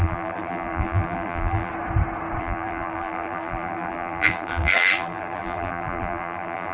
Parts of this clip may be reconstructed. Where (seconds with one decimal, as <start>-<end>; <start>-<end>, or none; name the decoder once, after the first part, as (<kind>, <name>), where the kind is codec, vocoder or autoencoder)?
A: 0.0-1.7 (vocoder, BigVGAN v2); 2.4-6.7